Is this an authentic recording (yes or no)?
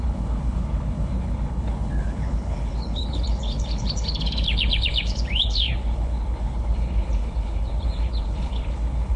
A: no